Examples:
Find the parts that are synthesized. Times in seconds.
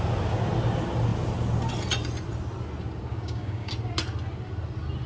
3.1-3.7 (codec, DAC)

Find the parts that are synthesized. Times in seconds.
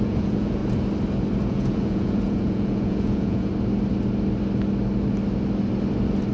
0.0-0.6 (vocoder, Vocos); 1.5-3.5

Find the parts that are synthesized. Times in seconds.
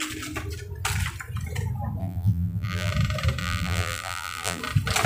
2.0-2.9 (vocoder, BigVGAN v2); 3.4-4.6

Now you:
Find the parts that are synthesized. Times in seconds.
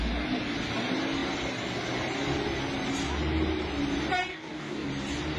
4.3-4.9 (codec, DAC)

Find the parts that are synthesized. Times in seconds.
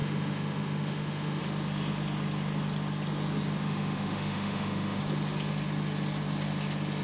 0.0-1.4 (autoencoder, DAC-VAE); 3.6-5.0